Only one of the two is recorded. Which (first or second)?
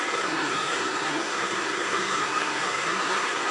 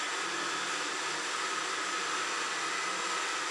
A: second